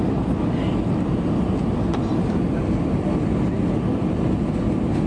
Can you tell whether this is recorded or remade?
recorded